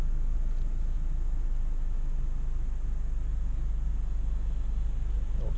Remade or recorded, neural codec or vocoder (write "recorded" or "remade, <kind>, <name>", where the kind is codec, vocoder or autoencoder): recorded